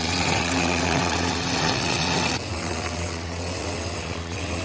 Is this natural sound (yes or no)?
no